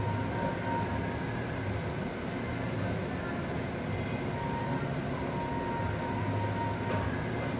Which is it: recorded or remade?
recorded